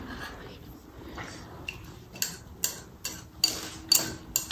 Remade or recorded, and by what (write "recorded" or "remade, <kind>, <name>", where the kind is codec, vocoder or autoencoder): recorded